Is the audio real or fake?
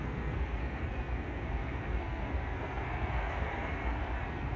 fake